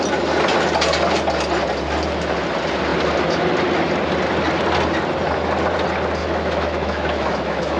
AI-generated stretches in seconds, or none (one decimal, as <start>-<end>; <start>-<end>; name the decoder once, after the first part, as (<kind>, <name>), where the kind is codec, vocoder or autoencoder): 6.2-7.8 (autoencoder, DAC-VAE)